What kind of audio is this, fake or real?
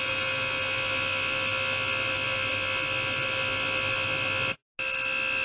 real